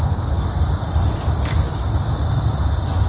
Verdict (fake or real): real